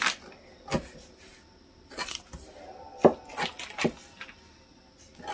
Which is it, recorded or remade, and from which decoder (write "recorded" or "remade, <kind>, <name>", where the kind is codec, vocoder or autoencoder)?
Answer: recorded